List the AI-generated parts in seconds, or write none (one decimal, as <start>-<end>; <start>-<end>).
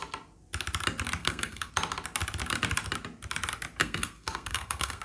1.2-1.7; 3.8-5.0